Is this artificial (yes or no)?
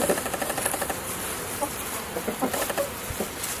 no